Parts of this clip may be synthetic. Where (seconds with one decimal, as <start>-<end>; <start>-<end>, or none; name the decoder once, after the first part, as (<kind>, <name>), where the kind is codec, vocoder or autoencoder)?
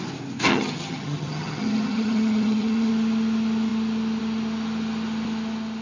0.5-2.9 (vocoder, HiFi-GAN)